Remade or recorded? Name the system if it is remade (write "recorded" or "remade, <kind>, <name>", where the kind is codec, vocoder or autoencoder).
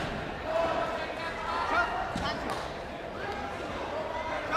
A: recorded